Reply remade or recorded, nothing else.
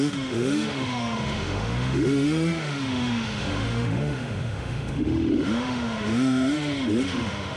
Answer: remade